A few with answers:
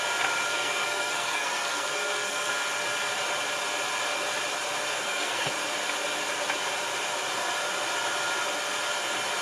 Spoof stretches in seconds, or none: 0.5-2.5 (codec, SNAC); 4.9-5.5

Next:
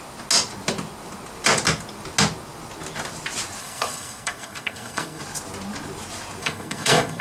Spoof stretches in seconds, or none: 3.6-5.2 (codec, SNAC); 6.4-7.2

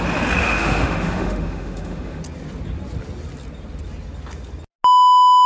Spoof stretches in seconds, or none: 0.4-2.2 (autoencoder, DAC-VAE)

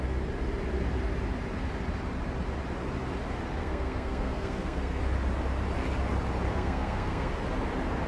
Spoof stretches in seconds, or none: 3.6-5.0 (codec, SNAC); 6.5-7.3

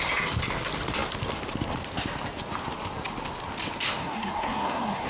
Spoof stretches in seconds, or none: 4.0-5.1 (codec, SNAC)

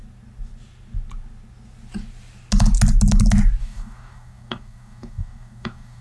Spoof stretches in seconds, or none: 3.6-6.0 (codec, DAC)

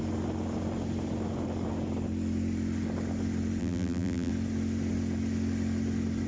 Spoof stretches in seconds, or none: 3.6-4.3 (vocoder, BigVGAN v2)

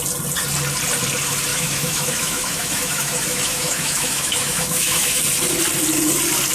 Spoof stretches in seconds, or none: 1.5-5.2 (autoencoder, DAC-VAE)